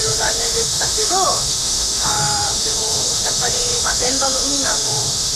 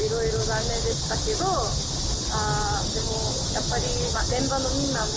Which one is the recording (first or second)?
second